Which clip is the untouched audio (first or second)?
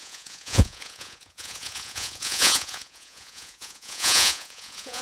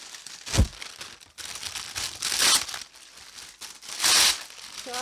second